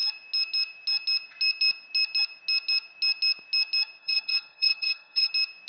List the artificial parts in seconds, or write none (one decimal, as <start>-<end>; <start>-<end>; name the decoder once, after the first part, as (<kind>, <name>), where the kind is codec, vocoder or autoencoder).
4.0-5.3 (codec, HILCodec)